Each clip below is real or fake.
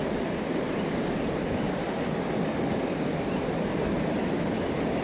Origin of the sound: real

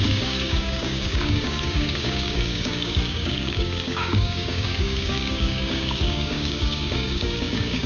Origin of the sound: fake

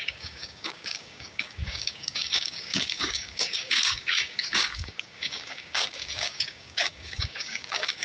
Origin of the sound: fake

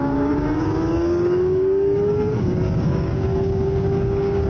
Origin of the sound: fake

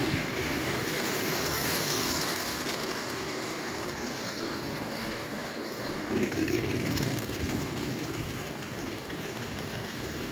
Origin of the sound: fake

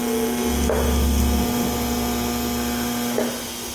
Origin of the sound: real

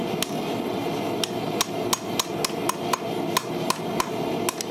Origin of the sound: real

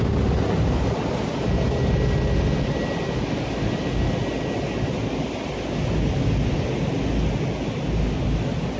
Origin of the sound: real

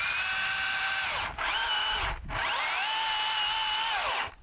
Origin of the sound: real